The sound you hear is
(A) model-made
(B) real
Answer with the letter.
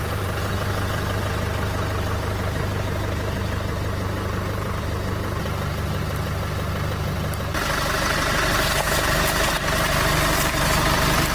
A